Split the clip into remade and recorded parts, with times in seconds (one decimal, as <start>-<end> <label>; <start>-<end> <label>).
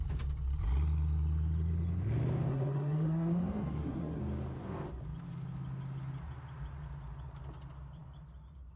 0.0-2.5 recorded; 2.5-4.2 remade; 4.2-8.8 recorded